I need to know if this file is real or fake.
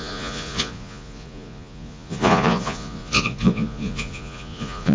fake